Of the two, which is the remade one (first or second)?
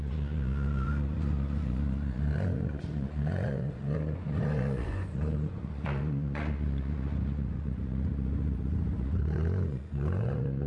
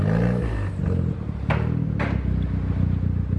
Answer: first